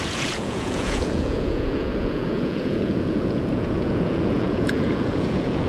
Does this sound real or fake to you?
fake